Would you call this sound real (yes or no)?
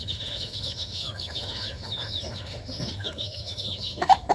no